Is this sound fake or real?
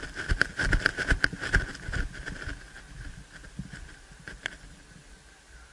real